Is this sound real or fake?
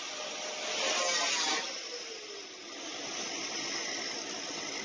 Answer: real